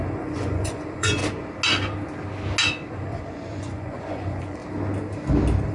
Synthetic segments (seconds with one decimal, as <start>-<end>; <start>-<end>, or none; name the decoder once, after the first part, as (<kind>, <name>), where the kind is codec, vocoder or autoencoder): 0.0-1.2 (vocoder, Vocos); 2.9-4.6